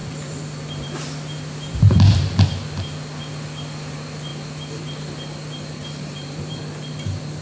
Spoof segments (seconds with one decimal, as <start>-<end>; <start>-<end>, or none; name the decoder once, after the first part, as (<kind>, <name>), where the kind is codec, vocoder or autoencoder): 0.0-1.0 (vocoder, BigVGAN v2); 1.7-2.4; 5.8-6.6